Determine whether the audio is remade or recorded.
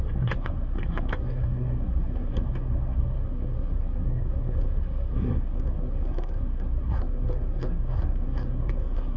remade